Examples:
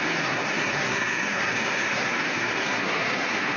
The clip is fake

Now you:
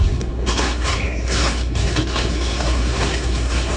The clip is fake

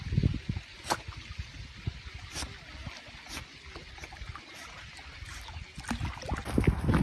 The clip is real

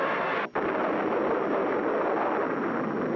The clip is real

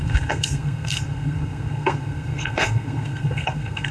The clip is fake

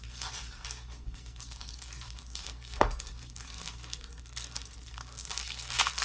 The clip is fake